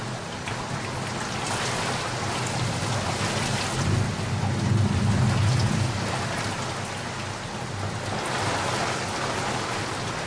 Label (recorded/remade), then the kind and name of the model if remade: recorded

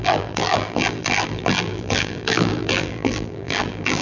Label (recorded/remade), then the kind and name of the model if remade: remade, vocoder, BigVGAN v2